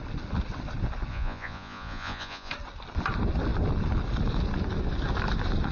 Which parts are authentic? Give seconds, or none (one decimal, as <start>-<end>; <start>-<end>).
0.0-1.1; 2.5-5.7

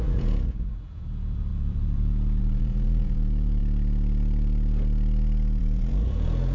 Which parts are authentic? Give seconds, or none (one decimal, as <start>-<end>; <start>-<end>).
3.6-5.6

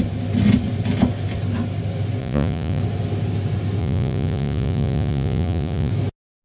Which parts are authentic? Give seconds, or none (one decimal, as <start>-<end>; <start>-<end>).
0.0-2.2; 2.8-3.8; 5.9-6.4

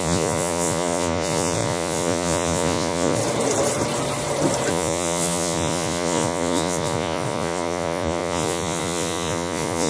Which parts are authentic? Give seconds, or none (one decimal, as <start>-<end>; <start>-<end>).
3.2-4.7

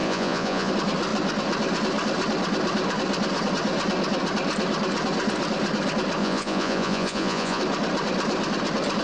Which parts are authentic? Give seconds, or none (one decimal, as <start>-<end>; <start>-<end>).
0.7-6.2; 7.6-9.0

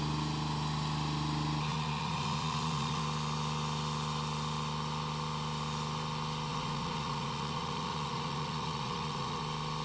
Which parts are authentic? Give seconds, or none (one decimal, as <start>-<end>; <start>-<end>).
0.0-1.7; 3.0-6.5; 9.4-9.8

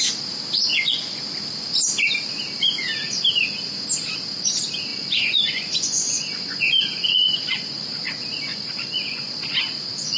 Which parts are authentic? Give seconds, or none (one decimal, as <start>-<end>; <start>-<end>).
0.0-0.7; 1.2-4.9; 8.0-8.5; 9.3-10.2